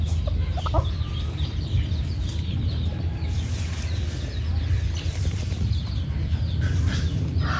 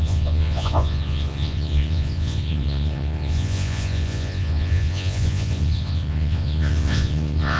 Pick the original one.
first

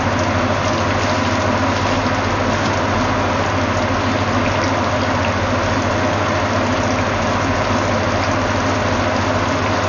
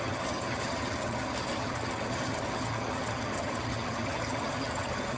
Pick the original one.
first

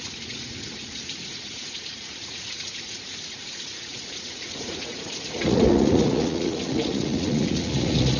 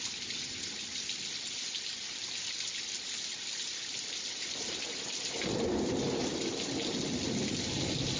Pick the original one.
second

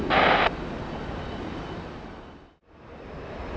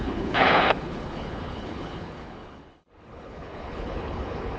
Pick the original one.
first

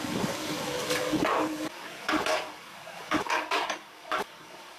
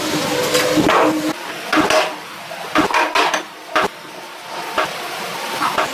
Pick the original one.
second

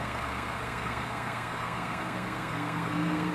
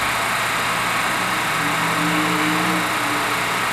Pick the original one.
second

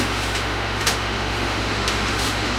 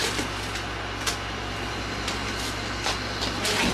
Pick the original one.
second